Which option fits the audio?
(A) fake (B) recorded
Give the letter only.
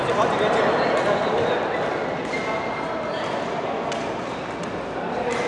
B